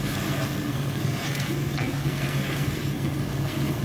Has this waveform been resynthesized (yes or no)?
yes